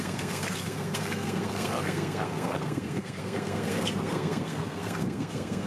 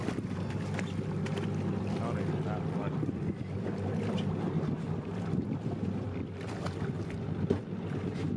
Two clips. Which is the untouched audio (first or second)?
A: second